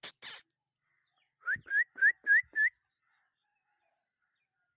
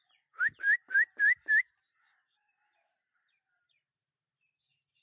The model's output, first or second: second